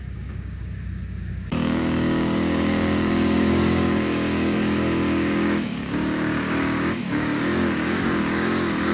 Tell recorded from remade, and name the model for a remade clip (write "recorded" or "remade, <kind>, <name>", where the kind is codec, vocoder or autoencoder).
remade, codec, DAC